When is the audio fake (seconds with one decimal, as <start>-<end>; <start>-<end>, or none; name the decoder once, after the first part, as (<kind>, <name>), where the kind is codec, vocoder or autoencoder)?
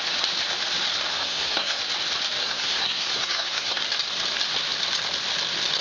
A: 1.1-1.8 (codec, SNAC); 2.4-3.8